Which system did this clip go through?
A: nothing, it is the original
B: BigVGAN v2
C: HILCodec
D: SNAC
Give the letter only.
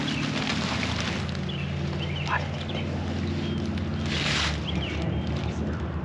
A